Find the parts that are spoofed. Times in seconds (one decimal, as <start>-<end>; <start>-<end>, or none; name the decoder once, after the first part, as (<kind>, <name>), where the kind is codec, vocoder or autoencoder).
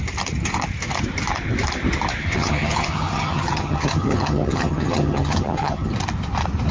2.2-5.9 (vocoder, HiFi-GAN)